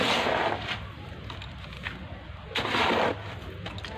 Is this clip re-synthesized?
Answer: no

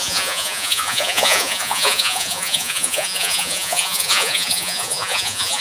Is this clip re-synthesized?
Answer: yes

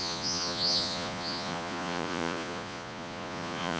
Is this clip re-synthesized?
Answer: yes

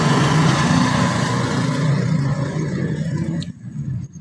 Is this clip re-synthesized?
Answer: yes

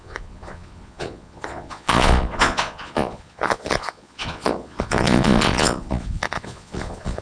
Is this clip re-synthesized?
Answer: yes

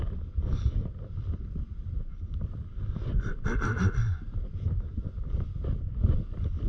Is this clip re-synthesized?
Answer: no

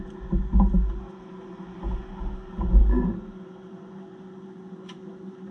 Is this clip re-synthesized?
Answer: no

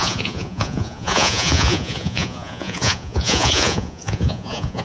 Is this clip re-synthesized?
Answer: yes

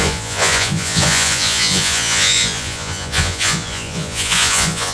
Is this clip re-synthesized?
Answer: yes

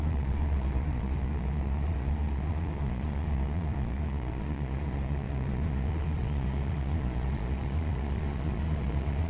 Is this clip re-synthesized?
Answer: yes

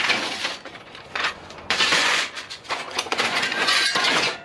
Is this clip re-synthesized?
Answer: yes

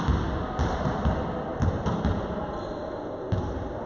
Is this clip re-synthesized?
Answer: no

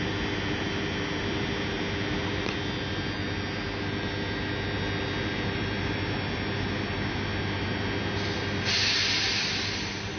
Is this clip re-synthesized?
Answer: no